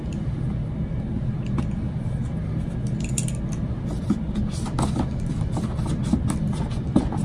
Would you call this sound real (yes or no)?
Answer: yes